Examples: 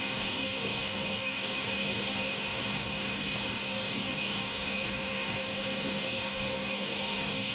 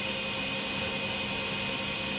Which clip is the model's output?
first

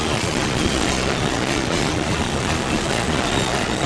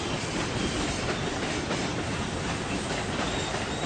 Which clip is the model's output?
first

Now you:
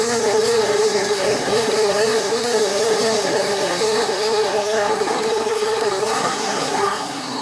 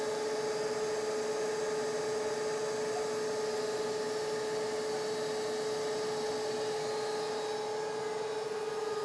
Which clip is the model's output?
first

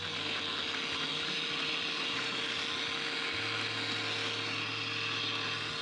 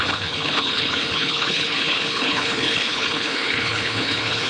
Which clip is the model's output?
second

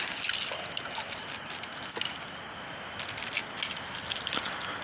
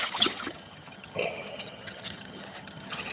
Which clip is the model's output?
second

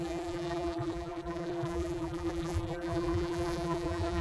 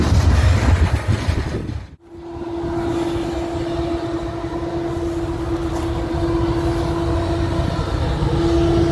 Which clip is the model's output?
first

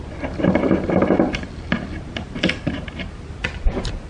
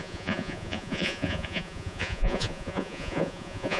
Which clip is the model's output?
second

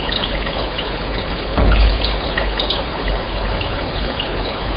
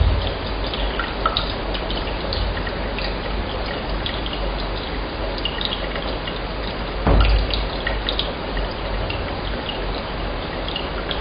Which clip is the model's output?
first